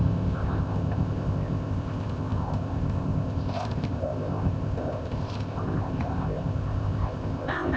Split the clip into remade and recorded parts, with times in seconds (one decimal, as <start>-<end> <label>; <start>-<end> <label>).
0.0-7.8 remade